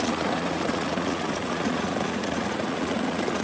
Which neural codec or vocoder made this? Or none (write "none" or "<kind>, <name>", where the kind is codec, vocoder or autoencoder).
vocoder, Vocos